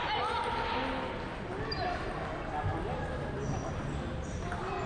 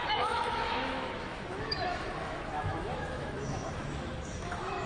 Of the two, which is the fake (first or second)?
second